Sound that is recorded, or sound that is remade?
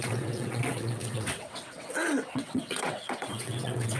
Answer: remade